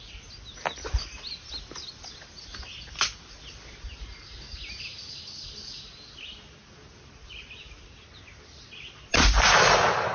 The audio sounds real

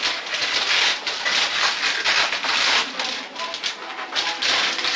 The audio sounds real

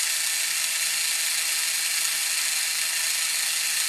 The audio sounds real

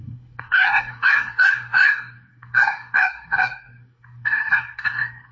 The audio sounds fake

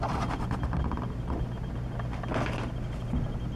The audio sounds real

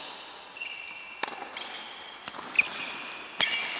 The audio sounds real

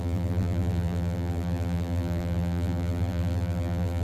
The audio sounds fake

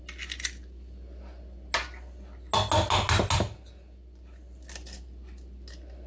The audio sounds real